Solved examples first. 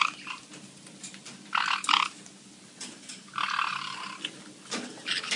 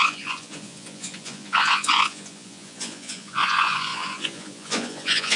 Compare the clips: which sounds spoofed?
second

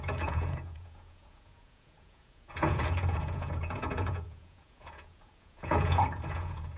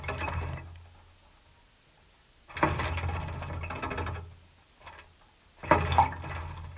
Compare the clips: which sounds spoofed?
first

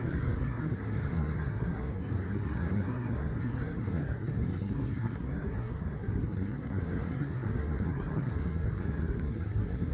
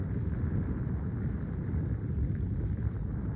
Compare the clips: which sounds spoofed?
first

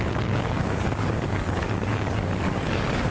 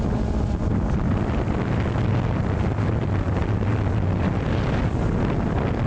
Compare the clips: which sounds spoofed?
first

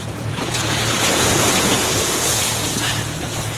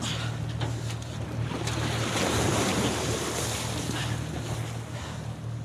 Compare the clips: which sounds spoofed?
first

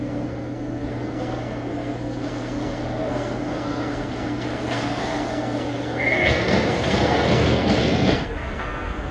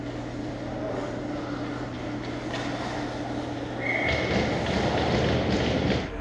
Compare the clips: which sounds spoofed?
first